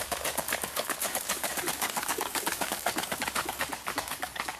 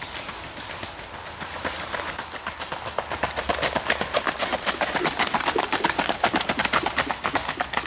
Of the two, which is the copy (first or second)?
first